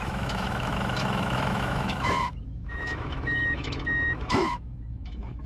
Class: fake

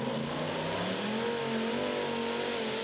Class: real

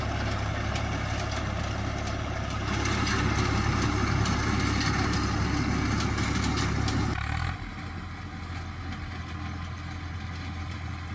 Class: real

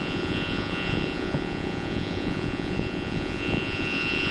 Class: fake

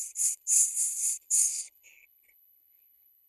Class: fake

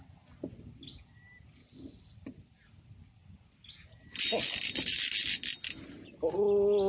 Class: real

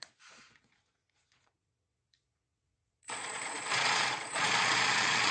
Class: fake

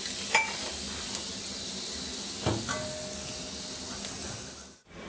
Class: real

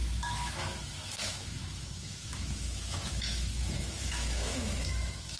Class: fake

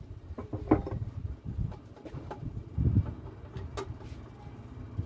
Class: real